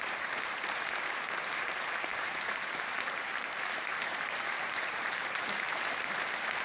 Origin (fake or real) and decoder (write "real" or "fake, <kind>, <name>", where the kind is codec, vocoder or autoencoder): fake, vocoder, BigVGAN v2